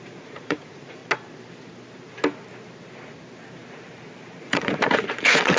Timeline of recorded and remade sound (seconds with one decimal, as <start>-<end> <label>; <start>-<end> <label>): 0.0-1.0 remade; 1.0-4.4 recorded; 4.4-5.6 remade